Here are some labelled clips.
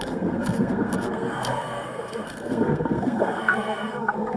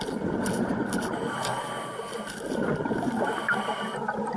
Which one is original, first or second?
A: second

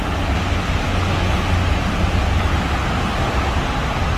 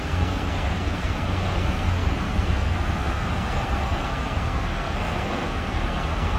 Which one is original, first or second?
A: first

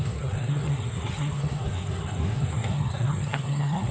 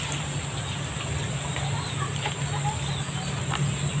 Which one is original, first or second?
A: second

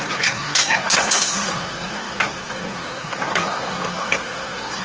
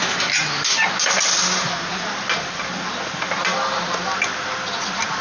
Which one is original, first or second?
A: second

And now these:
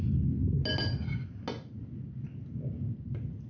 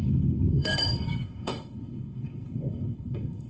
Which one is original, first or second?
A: first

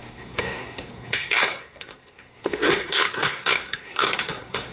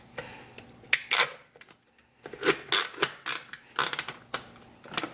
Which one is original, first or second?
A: second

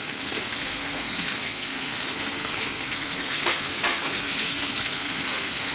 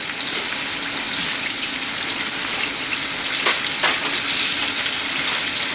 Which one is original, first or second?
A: second